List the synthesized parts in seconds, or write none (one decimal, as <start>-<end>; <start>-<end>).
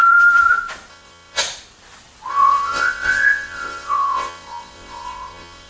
0.9-1.4; 2.3-5.7